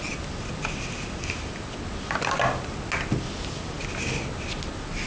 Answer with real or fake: real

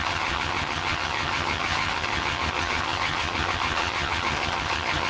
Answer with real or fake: fake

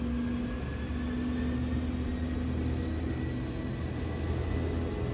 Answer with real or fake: real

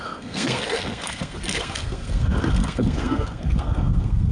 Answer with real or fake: fake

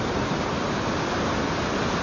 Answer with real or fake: real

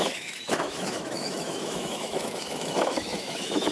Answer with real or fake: fake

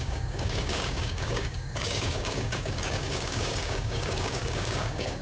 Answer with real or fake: fake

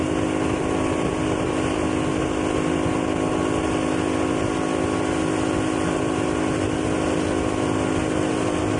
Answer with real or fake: real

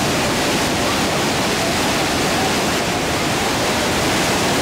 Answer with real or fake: real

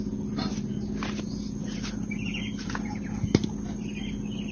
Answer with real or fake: real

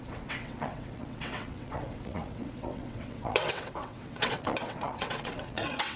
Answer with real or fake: fake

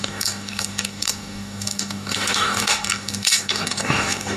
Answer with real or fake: fake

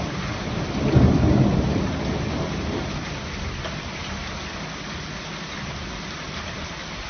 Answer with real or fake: real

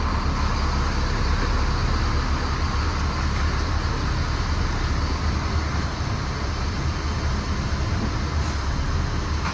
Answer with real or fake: real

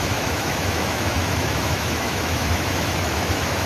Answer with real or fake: fake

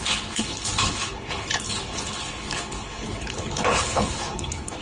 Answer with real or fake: fake